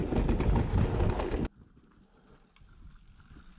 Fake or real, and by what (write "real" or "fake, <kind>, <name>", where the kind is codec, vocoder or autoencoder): real